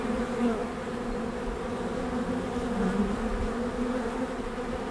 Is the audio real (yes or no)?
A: yes